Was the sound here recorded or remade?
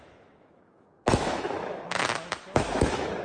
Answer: remade